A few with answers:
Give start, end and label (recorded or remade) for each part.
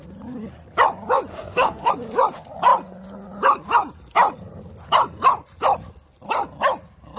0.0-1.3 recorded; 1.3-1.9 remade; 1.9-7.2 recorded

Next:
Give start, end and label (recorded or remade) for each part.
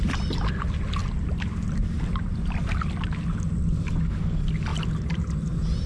0.0-4.7 recorded; 4.7-5.9 remade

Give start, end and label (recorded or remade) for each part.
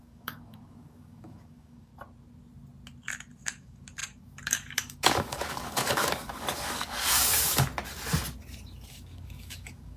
0.0-1.9 remade; 1.9-3.4 recorded; 3.4-7.7 remade; 7.7-8.9 recorded; 8.9-10.0 remade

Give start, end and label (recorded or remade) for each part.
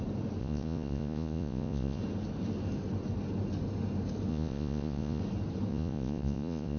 0.0-0.4 recorded; 0.4-2.0 remade; 2.0-4.3 recorded; 4.3-5.2 remade; 5.2-5.7 recorded; 5.7-6.8 remade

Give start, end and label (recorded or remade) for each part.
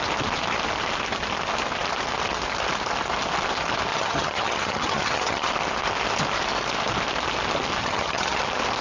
0.0-3.9 recorded; 3.9-5.5 remade; 5.5-7.8 recorded; 7.8-8.4 remade; 8.4-8.8 recorded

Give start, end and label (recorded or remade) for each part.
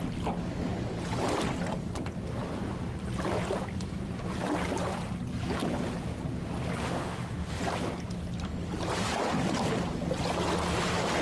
0.0-6.8 recorded; 6.8-7.6 remade; 7.6-11.2 recorded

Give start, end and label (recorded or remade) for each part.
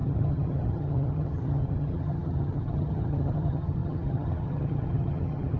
0.0-5.6 remade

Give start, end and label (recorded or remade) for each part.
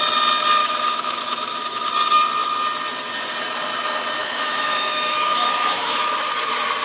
0.0-0.6 recorded; 0.6-1.9 remade; 1.9-4.2 recorded; 4.2-6.1 remade; 6.1-6.8 recorded